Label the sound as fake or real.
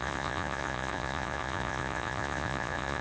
fake